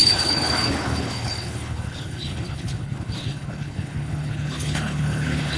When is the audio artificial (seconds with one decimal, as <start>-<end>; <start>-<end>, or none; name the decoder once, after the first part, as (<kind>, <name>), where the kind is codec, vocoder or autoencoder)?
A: 0.0-5.6 (codec, HILCodec)